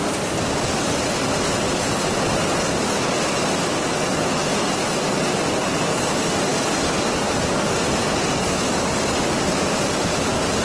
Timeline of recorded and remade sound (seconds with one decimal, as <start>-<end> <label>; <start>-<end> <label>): 0.0-10.6 recorded